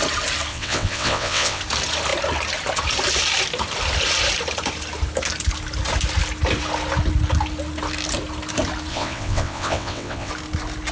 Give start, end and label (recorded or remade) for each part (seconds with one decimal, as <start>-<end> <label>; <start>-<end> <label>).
0.0-0.5 recorded; 0.5-1.6 remade; 1.6-8.9 recorded; 8.9-10.3 remade; 10.3-10.9 recorded